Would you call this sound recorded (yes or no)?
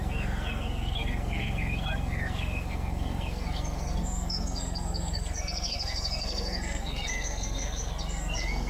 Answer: no